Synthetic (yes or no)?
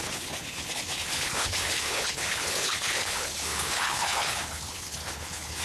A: yes